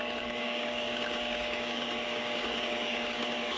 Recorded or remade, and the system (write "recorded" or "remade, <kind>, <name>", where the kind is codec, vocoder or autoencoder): remade, codec, DAC